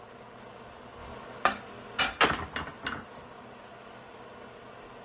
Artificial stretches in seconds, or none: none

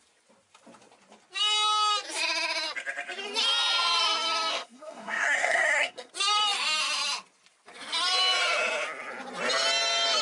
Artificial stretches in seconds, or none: 4.5-6.1 (codec, SNAC)

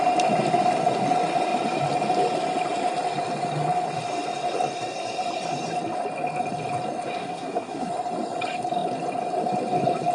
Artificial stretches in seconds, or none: 7.2-7.9 (codec, SNAC)

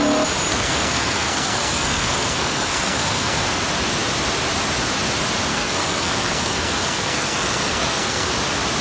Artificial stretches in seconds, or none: 0.5-3.6 (codec, SNAC); 5.5-8.3

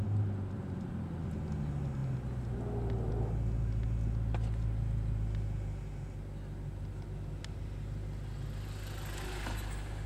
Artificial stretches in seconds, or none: none

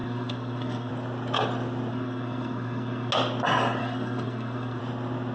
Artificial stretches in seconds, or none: 0.0-0.9 (codec, SNAC); 1.9-3.1; 3.8-4.8

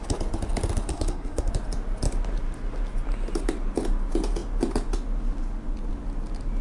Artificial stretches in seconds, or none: 0.9-1.5 (codec, SNAC)

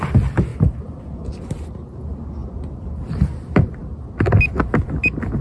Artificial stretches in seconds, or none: none